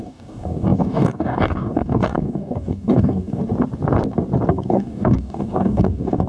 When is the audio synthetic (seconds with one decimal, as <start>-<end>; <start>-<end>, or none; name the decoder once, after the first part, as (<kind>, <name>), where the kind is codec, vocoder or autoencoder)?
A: 0.0-3.4 (codec, DAC); 4.5-6.3